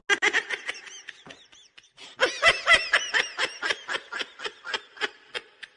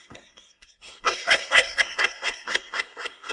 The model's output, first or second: second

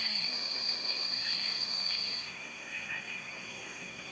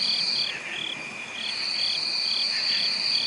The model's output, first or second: first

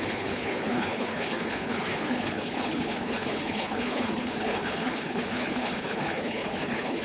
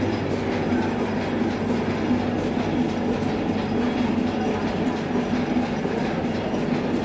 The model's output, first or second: first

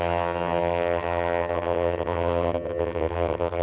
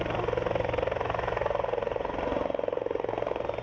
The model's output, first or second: first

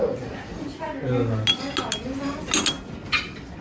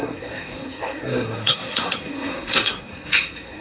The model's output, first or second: second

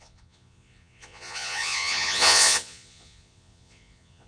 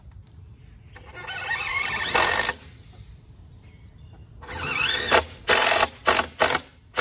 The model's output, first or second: first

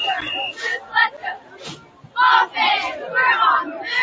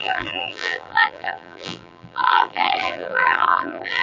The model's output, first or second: second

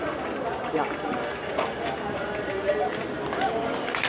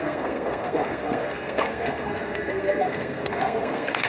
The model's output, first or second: second